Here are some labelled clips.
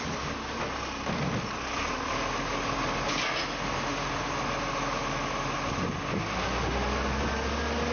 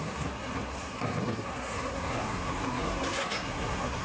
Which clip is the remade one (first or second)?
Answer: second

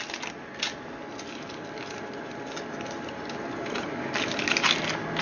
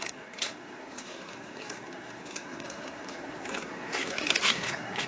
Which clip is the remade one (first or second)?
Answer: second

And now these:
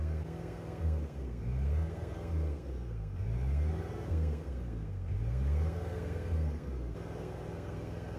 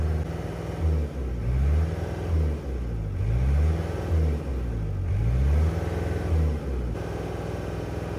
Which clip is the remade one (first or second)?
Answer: first